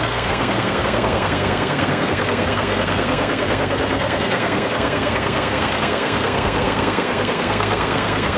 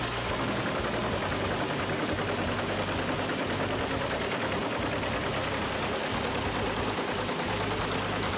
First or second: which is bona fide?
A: second